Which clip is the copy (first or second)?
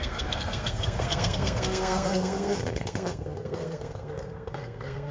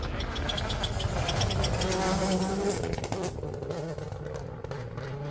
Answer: first